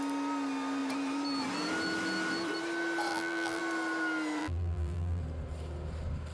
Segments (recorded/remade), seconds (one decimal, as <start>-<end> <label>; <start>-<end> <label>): 0.0-3.1 recorded; 3.1-3.6 remade; 3.6-4.4 recorded; 4.4-5.2 remade; 5.2-6.3 recorded

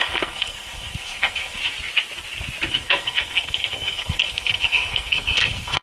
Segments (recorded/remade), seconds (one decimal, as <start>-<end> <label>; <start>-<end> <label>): 0.0-1.6 remade; 1.6-2.7 recorded; 2.7-5.8 remade

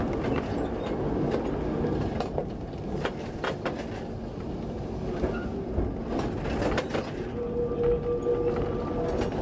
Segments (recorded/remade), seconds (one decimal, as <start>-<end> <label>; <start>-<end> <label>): 0.0-9.4 recorded

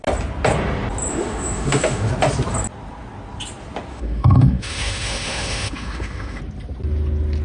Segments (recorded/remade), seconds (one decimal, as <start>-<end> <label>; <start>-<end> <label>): 0.0-1.1 recorded; 1.1-2.1 remade; 2.1-3.9 recorded; 3.9-6.4 remade; 6.4-7.4 recorded

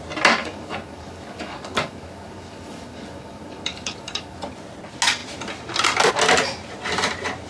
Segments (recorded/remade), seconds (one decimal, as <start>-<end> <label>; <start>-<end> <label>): 0.0-0.4 recorded; 0.4-4.4 remade; 4.4-7.5 recorded

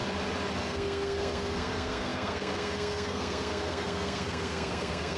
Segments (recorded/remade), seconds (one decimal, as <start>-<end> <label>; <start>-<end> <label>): 0.0-0.6 recorded; 0.6-5.2 remade

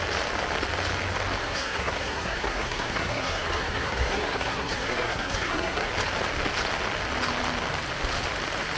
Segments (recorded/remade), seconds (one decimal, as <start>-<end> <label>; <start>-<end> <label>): 0.0-1.4 recorded; 1.4-5.9 remade; 5.9-8.8 recorded

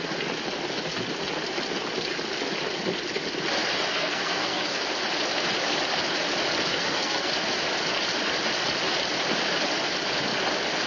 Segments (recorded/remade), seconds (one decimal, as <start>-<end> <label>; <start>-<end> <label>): 0.0-3.9 recorded; 3.9-4.8 remade; 4.8-6.7 recorded; 6.7-7.3 remade; 7.3-10.9 recorded